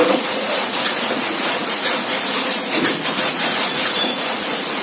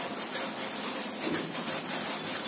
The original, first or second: second